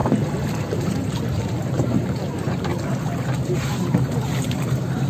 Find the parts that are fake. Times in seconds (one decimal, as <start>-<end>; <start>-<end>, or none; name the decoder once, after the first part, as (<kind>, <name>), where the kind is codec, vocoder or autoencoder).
0.6-2.7 (vocoder, BigVGAN v2); 3.6-5.1